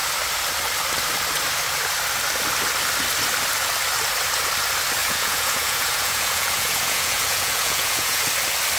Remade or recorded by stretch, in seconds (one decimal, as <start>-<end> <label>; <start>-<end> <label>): 0.0-5.0 recorded; 5.0-8.2 remade; 8.2-8.8 recorded